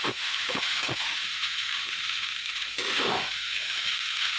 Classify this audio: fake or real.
fake